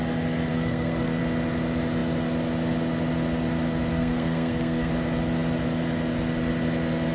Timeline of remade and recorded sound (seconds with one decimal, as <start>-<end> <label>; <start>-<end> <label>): 0.0-0.5 recorded; 0.5-1.2 remade; 1.2-3.9 recorded; 3.9-4.9 remade; 4.9-7.1 recorded